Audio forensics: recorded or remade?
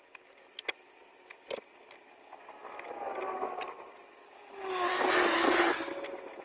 recorded